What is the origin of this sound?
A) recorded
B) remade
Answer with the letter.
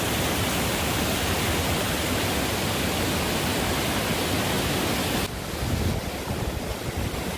A